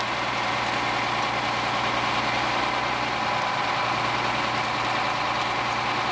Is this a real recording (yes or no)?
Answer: yes